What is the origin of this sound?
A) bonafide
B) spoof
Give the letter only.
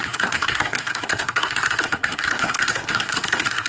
B